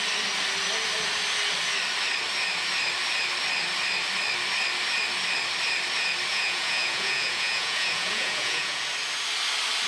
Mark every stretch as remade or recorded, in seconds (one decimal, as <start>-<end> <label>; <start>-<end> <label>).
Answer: 0.0-6.3 recorded; 6.3-8.8 remade; 8.8-9.9 recorded